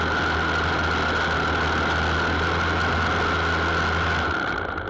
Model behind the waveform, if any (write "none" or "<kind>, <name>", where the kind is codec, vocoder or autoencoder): none